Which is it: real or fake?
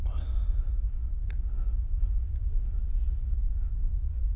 real